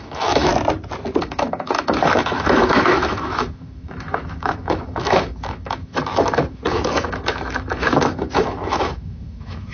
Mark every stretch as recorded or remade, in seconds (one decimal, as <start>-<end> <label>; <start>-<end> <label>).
0.0-0.5 remade; 0.5-1.2 recorded; 1.2-9.7 remade